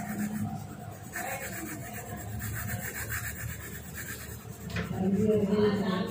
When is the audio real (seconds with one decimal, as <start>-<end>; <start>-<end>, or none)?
0.0-6.1